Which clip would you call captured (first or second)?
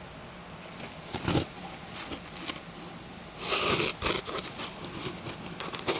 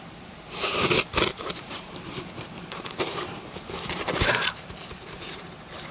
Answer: first